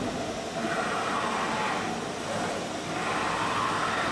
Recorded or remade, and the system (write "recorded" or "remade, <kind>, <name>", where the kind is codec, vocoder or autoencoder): recorded